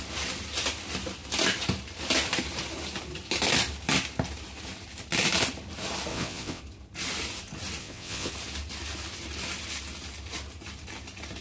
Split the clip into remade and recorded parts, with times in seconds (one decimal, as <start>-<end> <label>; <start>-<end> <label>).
0.0-6.1 recorded; 6.1-6.6 remade; 6.6-7.8 recorded; 7.8-8.3 remade; 8.3-11.4 recorded